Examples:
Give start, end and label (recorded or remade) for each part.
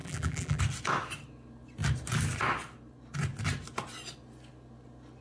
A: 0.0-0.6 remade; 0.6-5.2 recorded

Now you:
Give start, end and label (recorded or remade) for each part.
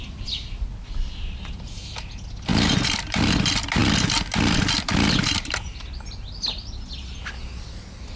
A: 0.0-2.5 recorded; 2.5-3.3 remade; 3.3-8.2 recorded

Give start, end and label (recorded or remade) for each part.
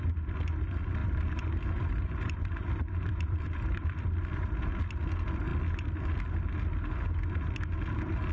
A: 0.0-1.0 recorded; 1.0-4.0 remade; 4.0-8.3 recorded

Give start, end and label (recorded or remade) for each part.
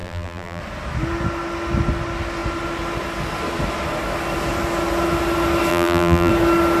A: 0.0-0.6 remade; 0.6-5.7 recorded; 5.7-6.3 remade; 6.3-6.8 recorded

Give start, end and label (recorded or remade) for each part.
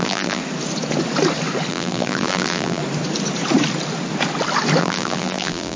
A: 0.0-0.4 remade; 0.4-1.7 recorded; 1.7-2.8 remade; 2.8-4.8 recorded; 4.8-5.8 remade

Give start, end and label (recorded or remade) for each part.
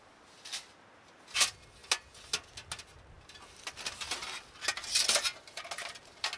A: 0.0-6.4 recorded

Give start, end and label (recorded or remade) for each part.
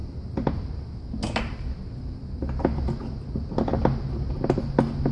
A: 0.0-5.1 recorded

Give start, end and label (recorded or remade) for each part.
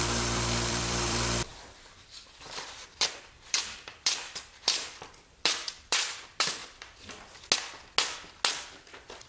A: 0.0-6.6 remade; 6.6-8.8 recorded; 8.8-9.3 remade